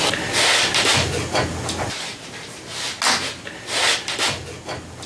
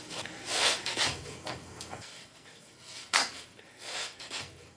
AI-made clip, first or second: second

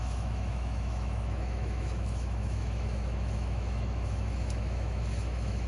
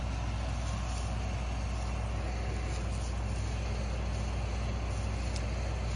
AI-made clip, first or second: first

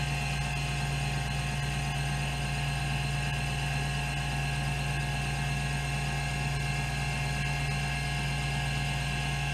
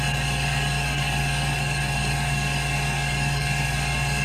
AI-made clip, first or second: second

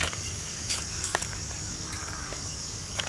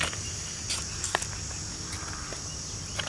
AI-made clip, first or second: first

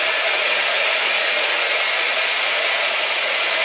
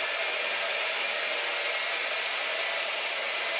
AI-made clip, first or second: first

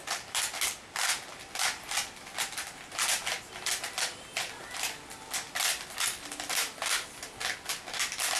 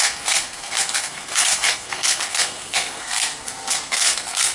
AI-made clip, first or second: second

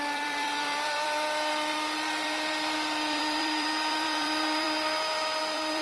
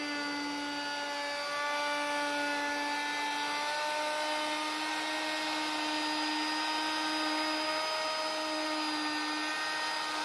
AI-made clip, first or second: first